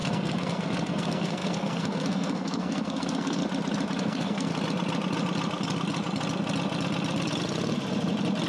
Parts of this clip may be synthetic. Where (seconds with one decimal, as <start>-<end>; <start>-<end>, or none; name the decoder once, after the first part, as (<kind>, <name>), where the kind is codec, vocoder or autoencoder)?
0.0-3.4 (codec, SNAC); 4.0-4.5